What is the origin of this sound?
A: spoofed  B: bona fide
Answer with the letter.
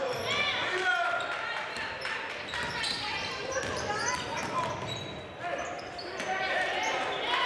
B